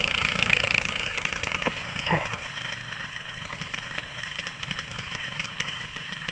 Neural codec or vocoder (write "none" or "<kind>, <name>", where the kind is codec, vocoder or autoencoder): codec, SNAC